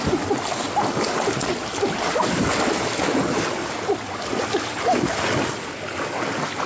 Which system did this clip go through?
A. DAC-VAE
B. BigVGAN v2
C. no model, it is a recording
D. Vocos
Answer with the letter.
C